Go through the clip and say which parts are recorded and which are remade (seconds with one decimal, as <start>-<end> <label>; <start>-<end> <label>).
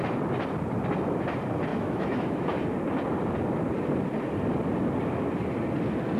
0.0-1.7 recorded; 1.7-2.6 remade; 2.6-6.2 recorded